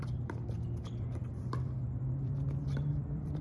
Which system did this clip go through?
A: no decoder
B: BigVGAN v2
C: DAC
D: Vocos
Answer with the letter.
B